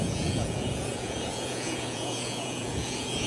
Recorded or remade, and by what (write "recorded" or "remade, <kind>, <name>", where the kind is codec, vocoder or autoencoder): remade, vocoder, Vocos